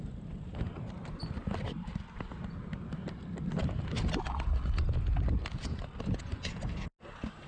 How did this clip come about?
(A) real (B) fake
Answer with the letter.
A